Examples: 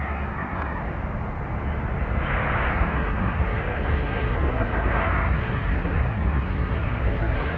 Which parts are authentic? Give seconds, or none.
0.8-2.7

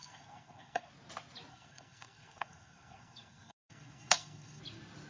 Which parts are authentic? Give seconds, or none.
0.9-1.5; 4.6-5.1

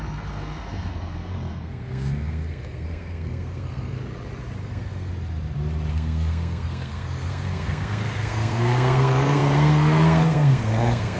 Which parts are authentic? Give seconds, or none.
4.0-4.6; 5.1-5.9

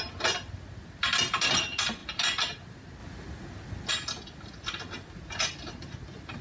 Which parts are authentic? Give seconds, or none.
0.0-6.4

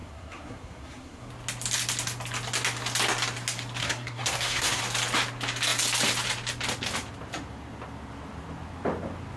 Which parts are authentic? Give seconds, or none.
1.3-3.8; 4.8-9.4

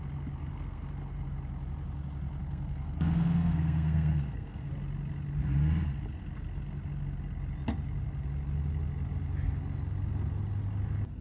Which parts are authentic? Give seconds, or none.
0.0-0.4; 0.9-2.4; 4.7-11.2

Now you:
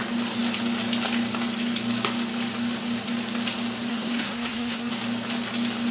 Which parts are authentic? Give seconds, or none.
0.0-3.9; 4.9-5.9

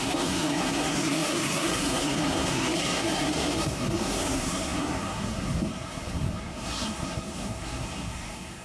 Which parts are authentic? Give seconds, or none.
none